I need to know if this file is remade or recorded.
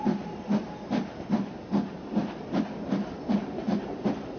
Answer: recorded